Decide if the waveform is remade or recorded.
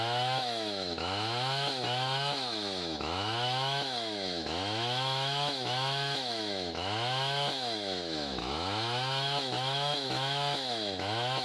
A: remade